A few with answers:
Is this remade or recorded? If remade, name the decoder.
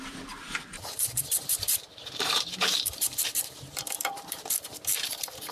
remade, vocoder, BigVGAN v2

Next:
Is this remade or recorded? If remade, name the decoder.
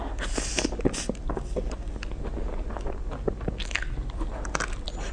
recorded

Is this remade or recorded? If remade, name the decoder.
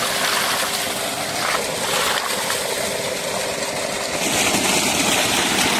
recorded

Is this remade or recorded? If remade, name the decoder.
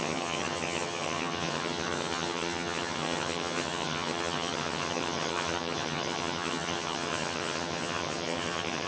remade, vocoder, HiFi-GAN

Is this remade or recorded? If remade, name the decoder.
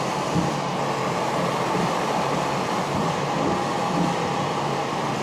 remade, vocoder, BigVGAN v2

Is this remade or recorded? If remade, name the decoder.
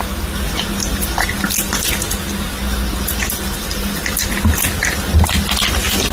recorded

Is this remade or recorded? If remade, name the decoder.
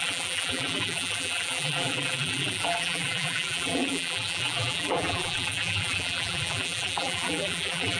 remade, vocoder, BigVGAN v2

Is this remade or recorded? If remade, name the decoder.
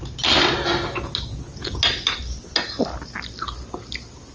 recorded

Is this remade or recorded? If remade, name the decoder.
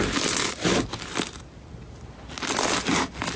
recorded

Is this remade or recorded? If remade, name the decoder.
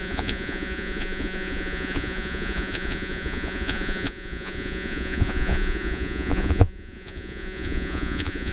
remade, vocoder, Vocos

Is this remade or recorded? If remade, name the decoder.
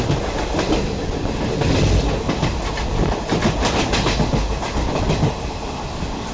recorded